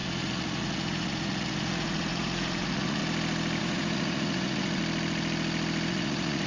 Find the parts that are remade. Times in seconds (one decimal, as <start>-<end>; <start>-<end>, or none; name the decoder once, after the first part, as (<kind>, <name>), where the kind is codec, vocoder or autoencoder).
0.0-3.0 (vocoder, Vocos); 3.6-4.8; 5.9-6.5